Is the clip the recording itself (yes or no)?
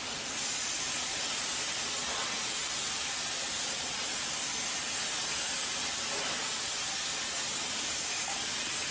yes